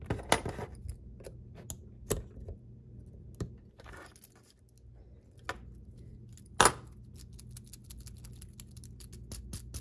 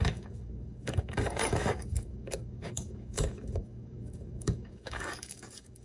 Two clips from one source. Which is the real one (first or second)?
first